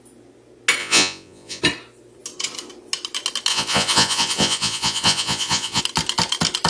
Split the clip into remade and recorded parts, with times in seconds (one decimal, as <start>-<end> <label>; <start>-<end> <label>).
0.0-0.8 recorded; 0.8-1.6 remade; 1.6-3.5 recorded; 3.5-5.8 remade; 5.8-6.7 recorded